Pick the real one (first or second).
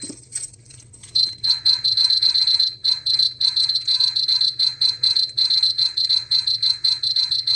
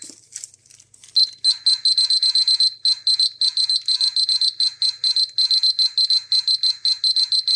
second